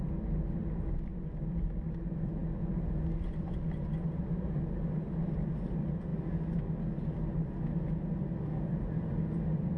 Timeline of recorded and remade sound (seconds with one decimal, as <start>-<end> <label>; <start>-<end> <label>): 0.0-9.8 recorded